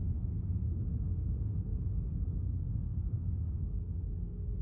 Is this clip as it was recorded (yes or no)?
no